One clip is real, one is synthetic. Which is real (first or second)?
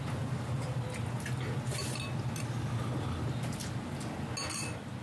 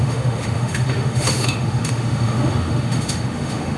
first